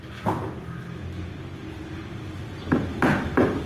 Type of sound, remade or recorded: recorded